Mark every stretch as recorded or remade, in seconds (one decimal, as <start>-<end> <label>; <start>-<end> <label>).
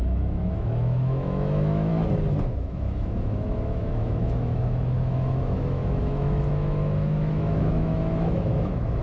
0.0-1.9 remade; 1.9-2.5 recorded; 2.5-9.0 remade